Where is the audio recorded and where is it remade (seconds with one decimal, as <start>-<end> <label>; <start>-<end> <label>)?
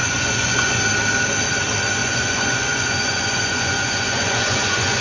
0.0-0.8 remade; 0.8-2.0 recorded; 2.0-5.0 remade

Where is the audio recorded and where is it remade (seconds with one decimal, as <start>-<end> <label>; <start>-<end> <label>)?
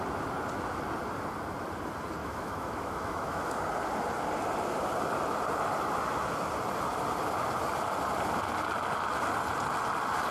0.0-2.2 recorded; 2.2-3.5 remade; 3.5-10.3 recorded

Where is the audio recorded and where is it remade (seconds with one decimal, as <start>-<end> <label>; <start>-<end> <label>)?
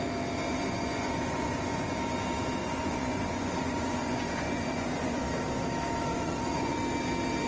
0.0-0.5 recorded; 0.5-1.9 remade; 1.9-2.6 recorded; 2.6-5.2 remade; 5.2-6.1 recorded; 6.1-6.8 remade; 6.8-7.5 recorded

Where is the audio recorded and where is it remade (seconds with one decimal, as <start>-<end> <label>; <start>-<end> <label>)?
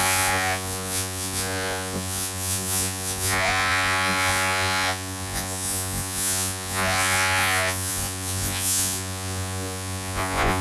0.0-10.6 remade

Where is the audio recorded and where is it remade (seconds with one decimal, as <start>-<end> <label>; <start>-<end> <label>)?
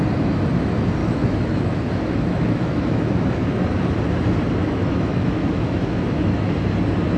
0.0-1.0 recorded; 1.0-3.5 remade; 3.5-4.6 recorded; 4.6-6.5 remade; 6.5-7.2 recorded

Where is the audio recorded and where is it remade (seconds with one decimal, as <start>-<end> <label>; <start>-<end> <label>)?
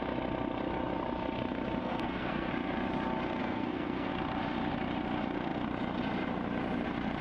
0.0-1.8 recorded; 1.8-2.5 remade; 2.5-3.4 recorded; 3.4-4.1 remade; 4.1-7.2 recorded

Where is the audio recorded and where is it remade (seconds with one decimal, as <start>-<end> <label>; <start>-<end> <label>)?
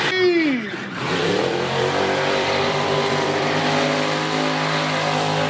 0.0-0.8 recorded; 0.8-3.6 remade; 3.6-5.5 recorded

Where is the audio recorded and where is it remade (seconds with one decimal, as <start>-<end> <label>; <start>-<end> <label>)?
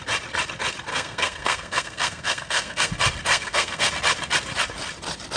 0.0-0.9 recorded; 0.9-2.9 remade; 2.9-3.3 recorded; 3.3-3.9 remade; 3.9-5.4 recorded